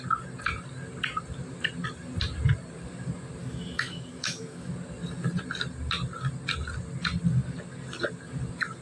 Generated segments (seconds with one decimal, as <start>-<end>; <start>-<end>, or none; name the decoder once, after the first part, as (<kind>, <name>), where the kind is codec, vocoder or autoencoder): 3.4-4.7 (autoencoder, DAC-VAE)